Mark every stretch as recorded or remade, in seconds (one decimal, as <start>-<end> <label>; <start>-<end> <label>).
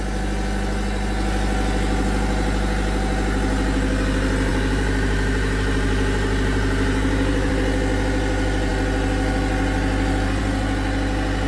0.0-4.5 recorded; 4.5-7.5 remade; 7.5-11.5 recorded